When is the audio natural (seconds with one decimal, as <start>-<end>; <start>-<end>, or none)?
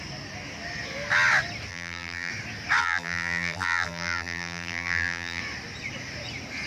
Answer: 0.0-1.7; 2.3-2.8; 5.4-6.7